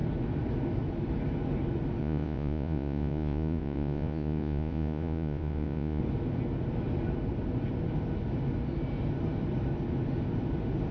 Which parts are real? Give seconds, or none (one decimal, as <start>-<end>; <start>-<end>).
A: 0.0-2.0; 6.0-10.9